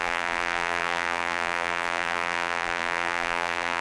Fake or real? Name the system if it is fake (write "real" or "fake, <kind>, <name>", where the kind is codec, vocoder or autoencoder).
fake, vocoder, BigVGAN v2